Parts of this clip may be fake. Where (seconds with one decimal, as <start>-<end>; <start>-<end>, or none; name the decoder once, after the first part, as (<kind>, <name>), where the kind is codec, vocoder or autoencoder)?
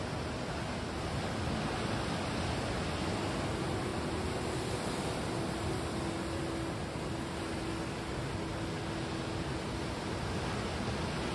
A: none